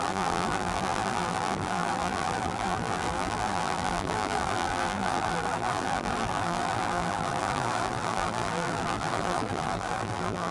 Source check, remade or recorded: remade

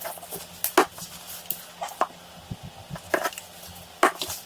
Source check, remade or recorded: recorded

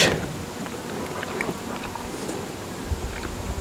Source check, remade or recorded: recorded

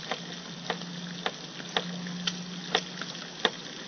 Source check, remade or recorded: recorded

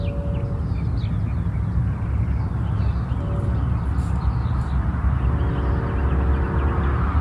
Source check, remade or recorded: recorded